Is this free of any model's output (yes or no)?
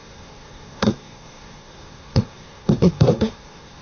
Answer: no